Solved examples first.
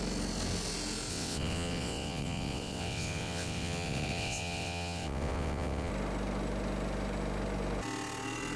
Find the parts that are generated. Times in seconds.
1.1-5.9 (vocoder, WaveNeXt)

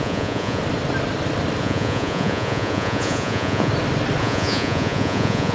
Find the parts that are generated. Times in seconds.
0.0-0.6 (vocoder, Vocos); 1.6-3.7; 4.2-5.5

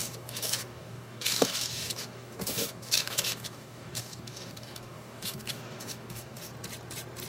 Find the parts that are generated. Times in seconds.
0.0-6.5 (codec, DAC)

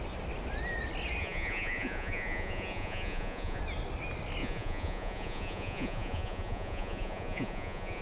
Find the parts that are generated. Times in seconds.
1.2-3.6 (vocoder, Vocos); 4.4-8.0

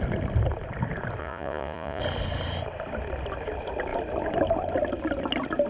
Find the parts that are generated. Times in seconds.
1.2-2.0 (vocoder, Vocos)

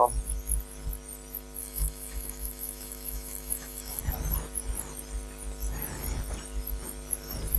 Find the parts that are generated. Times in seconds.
1.6-4.0 (autoencoder, DAC-VAE)